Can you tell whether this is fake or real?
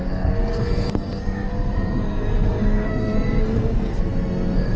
fake